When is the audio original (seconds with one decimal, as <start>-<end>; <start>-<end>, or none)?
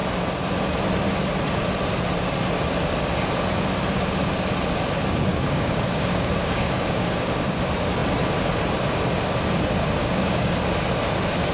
0.0-5.3; 7.5-9.8; 10.5-11.5